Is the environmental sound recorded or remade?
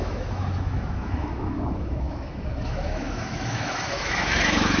remade